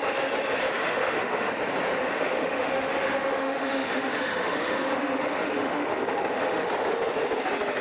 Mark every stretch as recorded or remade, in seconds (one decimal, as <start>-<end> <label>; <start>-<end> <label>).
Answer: 0.0-0.8 recorded; 0.8-1.5 remade; 1.5-2.0 recorded; 2.0-6.7 remade; 6.7-7.8 recorded